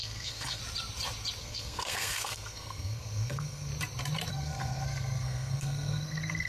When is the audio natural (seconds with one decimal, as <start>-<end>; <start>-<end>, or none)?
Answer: 0.6-1.4; 3.7-4.3